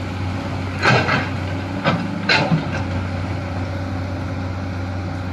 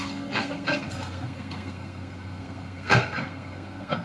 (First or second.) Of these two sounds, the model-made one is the second